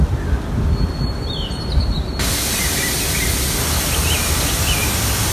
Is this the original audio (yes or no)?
yes